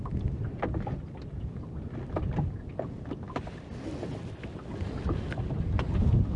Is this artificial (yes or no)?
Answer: no